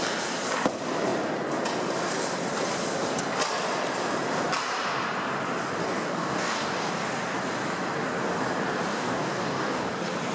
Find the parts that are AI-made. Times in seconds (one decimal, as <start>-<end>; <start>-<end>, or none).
5.8-6.9; 8.9-9.9